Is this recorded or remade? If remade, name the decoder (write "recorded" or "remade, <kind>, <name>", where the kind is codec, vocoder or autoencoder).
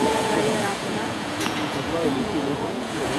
remade, vocoder, Vocos